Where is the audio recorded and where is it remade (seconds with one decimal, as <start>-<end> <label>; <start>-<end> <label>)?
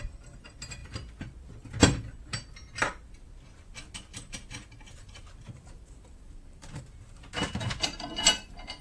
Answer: 0.0-4.1 recorded; 4.1-6.8 remade; 6.8-7.7 recorded; 7.7-8.8 remade